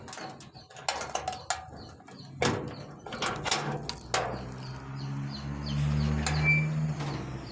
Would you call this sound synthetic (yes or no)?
no